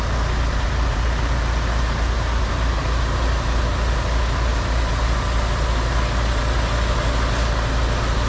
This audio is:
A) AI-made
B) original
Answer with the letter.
B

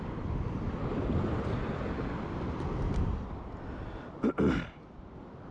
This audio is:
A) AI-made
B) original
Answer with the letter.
B